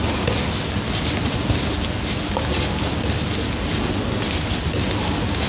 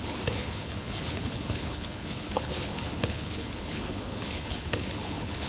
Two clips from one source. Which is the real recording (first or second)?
first